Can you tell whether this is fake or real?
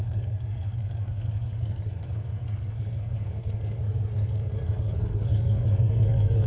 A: fake